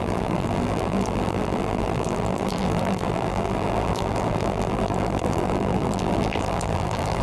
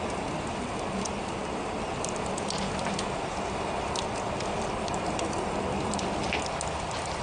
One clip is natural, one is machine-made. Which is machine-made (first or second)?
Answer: first